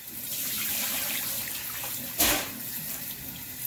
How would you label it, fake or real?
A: fake